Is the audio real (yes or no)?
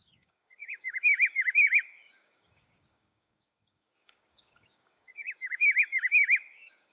no